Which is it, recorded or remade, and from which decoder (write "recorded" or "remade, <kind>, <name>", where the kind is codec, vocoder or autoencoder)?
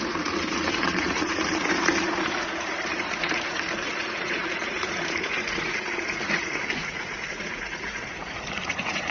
remade, vocoder, Vocos